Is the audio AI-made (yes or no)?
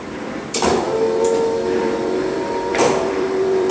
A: yes